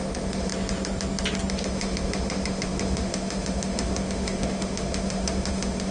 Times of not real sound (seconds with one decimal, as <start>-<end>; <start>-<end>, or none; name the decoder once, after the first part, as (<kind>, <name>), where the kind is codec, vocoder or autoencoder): 0.0-0.5 (autoencoder, DAC-VAE); 1.5-5.9